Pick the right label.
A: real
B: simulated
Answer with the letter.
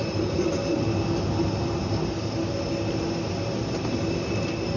A